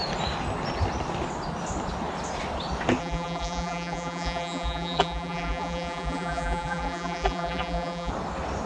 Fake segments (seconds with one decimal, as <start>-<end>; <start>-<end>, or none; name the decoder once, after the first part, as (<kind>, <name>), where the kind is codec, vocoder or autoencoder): 3.0-8.1 (vocoder, BigVGAN v2)